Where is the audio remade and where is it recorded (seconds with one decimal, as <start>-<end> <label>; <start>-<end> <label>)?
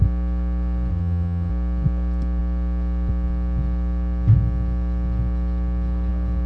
0.0-0.9 recorded; 0.9-1.5 remade; 1.5-6.5 recorded